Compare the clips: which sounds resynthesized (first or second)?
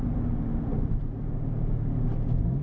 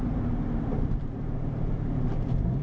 second